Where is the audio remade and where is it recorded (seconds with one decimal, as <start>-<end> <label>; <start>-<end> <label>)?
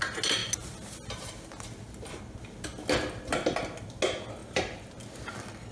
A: 0.0-4.4 recorded; 4.4-4.9 remade; 4.9-5.7 recorded